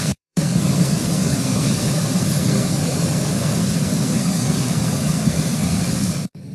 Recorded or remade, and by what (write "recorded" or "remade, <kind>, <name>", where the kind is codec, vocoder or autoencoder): remade, codec, SNAC